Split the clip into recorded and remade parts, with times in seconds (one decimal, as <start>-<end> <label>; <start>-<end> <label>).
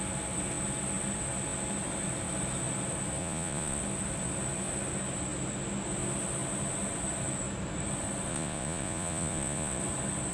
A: 0.0-3.2 recorded; 3.2-3.8 remade; 3.8-8.3 recorded; 8.3-9.8 remade; 9.8-10.3 recorded